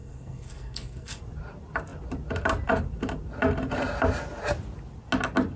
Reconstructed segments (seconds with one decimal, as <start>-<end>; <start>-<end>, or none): 0.0-1.2